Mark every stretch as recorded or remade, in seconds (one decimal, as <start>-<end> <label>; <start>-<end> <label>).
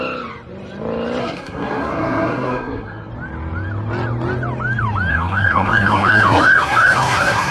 0.0-1.2 recorded; 1.2-3.1 remade; 3.1-5.1 recorded; 5.1-7.5 remade